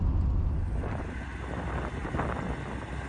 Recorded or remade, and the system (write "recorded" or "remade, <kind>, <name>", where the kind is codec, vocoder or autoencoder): recorded